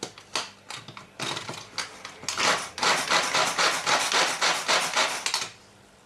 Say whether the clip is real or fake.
real